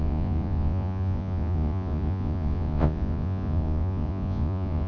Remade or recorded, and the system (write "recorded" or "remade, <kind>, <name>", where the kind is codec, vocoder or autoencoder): remade, vocoder, Vocos